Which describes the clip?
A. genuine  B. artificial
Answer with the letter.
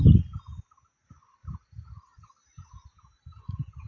A